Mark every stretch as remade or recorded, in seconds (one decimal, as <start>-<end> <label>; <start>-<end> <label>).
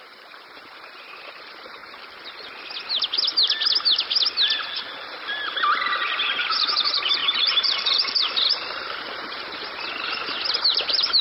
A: 0.0-1.8 remade; 1.8-6.4 recorded; 6.4-11.2 remade